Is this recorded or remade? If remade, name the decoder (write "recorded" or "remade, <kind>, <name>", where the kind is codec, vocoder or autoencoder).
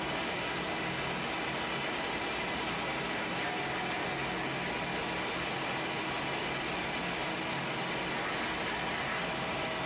recorded